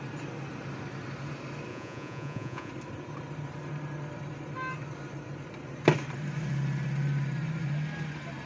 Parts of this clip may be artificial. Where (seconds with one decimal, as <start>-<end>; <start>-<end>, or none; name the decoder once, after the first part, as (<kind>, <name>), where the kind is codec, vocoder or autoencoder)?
1.7-2.7 (vocoder, Vocos)